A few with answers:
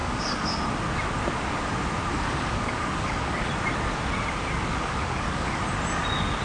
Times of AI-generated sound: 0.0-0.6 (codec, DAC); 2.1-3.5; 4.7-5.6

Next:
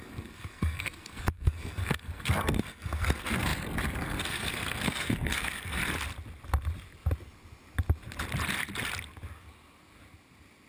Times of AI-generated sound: 0.0-5.8 (codec, SNAC)

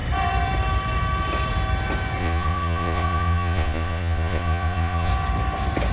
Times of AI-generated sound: 2.2-5.1 (vocoder, Vocos)

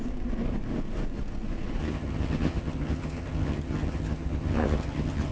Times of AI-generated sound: 1.8-5.3 (vocoder, HiFi-GAN)

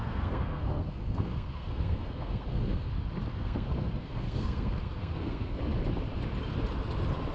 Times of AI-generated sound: 0.0-2.9 (codec, SNAC); 3.3-5.6

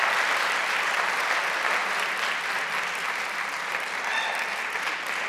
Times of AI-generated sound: 0.0-1.8 (vocoder, BigVGAN v2); 2.6-5.3

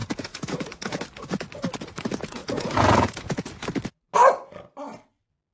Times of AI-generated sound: 0.0-1.0 (vocoder, Vocos); 2.4-3.4